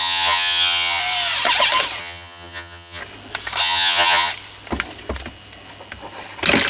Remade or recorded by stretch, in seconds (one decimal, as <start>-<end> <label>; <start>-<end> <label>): 0.0-1.0 remade; 1.0-2.0 recorded; 2.0-3.0 remade; 3.0-3.6 recorded; 3.6-4.3 remade; 4.3-6.7 recorded